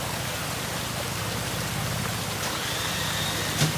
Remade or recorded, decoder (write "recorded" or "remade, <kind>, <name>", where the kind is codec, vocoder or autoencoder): recorded